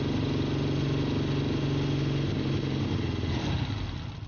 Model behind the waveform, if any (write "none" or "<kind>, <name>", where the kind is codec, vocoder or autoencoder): none